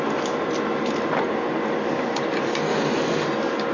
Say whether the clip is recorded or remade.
recorded